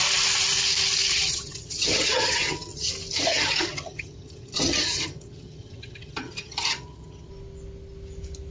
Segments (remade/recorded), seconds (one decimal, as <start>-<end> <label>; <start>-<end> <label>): 0.0-1.1 recorded; 1.1-2.9 remade; 2.9-3.3 recorded; 3.3-7.3 remade; 7.3-8.5 recorded

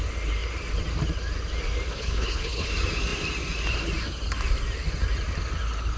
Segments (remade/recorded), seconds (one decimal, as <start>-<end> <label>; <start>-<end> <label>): 0.0-1.9 recorded; 1.9-2.7 remade; 2.7-6.0 recorded

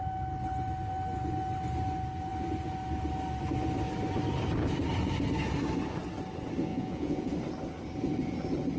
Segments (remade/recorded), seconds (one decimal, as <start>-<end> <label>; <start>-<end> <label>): 0.0-6.7 recorded; 6.7-7.3 remade; 7.3-8.8 recorded